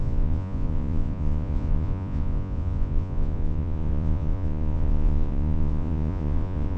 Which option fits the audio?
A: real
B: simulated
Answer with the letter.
B